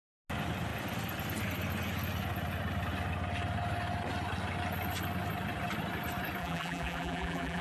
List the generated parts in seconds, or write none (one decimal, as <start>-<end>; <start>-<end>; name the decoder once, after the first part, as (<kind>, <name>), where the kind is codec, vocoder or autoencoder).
6.4-7.6 (vocoder, BigVGAN v2)